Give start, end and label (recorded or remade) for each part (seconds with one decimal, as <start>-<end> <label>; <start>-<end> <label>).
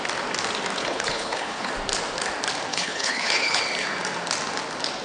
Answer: 0.0-0.8 recorded; 0.8-1.7 remade; 1.7-2.7 recorded; 2.7-3.6 remade; 3.6-5.0 recorded